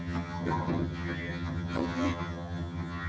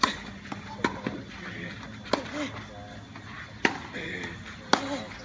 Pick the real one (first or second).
second